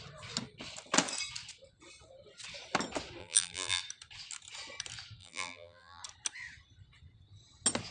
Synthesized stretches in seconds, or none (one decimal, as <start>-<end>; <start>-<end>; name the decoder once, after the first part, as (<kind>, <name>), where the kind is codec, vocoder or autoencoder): 3.2-3.8 (vocoder, BigVGAN v2); 5.2-6.0